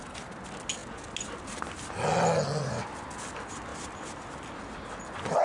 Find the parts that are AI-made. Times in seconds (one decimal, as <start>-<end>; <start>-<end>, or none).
none